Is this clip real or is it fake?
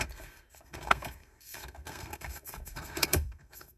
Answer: fake